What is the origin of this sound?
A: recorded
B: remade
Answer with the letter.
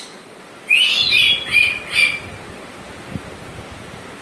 A